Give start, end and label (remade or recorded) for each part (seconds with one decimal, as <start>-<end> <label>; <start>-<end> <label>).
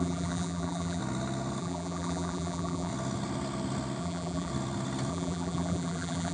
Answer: 0.0-1.0 remade; 1.0-1.6 recorded; 1.6-2.9 remade; 2.9-4.0 recorded; 4.0-4.5 remade; 4.5-5.1 recorded; 5.1-6.3 remade